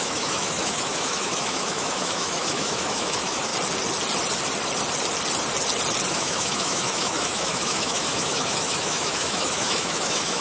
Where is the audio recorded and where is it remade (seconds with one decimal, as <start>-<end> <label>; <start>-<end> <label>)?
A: 0.0-3.5 remade; 3.5-6.1 recorded; 6.1-10.4 remade